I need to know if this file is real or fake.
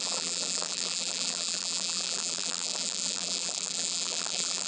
fake